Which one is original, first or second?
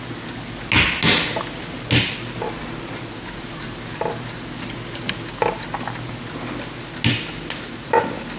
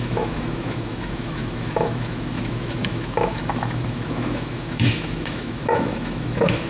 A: first